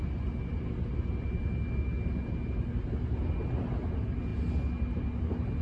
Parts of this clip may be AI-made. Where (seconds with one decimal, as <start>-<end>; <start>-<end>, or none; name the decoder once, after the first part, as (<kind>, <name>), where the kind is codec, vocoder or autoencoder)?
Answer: none

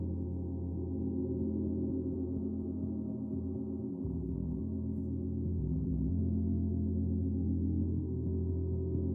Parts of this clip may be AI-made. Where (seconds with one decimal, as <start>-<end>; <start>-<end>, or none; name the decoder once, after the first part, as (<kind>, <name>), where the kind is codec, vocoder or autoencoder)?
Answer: 3.9-4.6 (vocoder, BigVGAN v2); 5.6-6.1